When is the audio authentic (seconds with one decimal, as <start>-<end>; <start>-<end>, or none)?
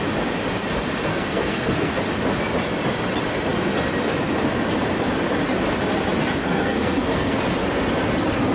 0.0-1.1; 2.0-6.4; 7.4-8.5